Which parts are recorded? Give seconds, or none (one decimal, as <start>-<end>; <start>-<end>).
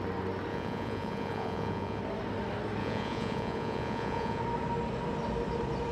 0.0-0.5; 2.0-2.8; 4.4-5.9